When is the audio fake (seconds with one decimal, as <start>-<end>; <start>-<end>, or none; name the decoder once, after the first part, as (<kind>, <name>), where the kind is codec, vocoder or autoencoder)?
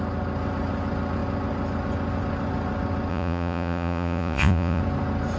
3.1-4.8 (vocoder, Vocos)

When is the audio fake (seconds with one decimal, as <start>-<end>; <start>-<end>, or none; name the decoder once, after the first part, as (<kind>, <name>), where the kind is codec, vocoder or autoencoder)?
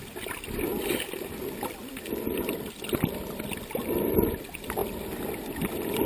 none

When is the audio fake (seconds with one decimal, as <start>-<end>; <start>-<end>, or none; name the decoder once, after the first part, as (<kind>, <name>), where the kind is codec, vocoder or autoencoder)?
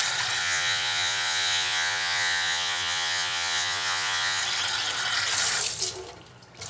0.4-4.4 (vocoder, Vocos)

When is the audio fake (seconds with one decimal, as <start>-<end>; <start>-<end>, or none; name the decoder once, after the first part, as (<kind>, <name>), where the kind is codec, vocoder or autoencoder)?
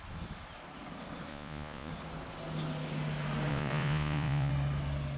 1.3-1.9 (vocoder, Vocos); 3.5-4.5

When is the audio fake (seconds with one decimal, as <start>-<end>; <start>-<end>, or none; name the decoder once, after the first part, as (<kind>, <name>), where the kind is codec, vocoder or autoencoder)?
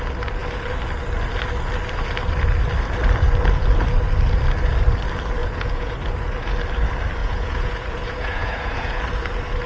5.4-5.9 (vocoder, Vocos); 7.2-9.0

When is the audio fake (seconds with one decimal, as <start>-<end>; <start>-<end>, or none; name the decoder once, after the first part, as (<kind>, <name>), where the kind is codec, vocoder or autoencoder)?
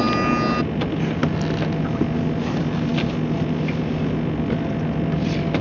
none